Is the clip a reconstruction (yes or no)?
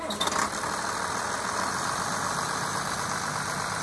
no